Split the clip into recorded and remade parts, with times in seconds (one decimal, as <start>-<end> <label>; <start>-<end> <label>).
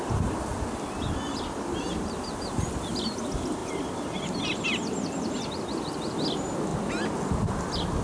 0.0-8.0 recorded